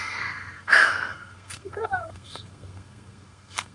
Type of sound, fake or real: fake